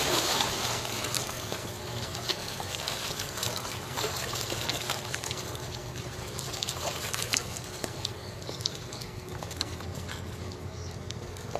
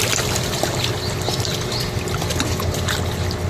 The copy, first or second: first